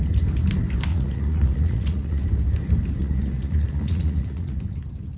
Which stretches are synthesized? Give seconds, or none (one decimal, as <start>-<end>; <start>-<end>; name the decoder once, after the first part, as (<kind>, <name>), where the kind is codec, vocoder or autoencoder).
0.9-2.2 (vocoder, Vocos); 3.0-4.6